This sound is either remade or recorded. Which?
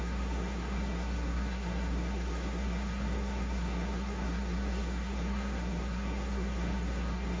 remade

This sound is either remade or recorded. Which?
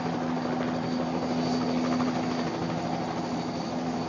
recorded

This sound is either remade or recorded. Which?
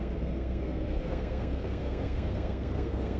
remade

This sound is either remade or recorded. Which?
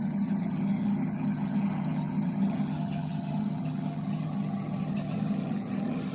remade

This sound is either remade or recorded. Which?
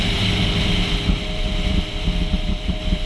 remade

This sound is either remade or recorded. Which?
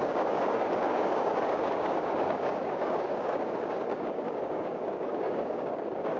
remade